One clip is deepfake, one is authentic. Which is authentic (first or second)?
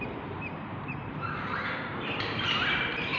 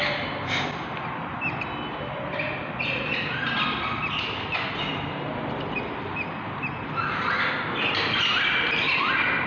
second